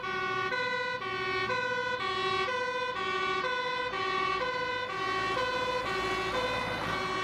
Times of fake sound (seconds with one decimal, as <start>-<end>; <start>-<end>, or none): none